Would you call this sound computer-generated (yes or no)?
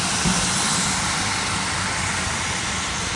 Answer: no